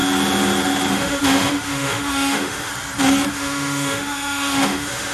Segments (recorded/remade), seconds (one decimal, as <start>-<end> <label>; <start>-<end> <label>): 0.0-0.9 recorded; 0.9-2.7 remade; 2.7-3.3 recorded; 3.3-5.1 remade